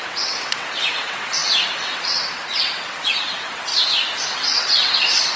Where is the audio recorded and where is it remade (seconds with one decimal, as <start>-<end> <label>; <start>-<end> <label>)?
0.0-3.7 remade; 3.7-4.3 recorded; 4.3-5.4 remade